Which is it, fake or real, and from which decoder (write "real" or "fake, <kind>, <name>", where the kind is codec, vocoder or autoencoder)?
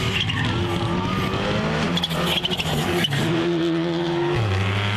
real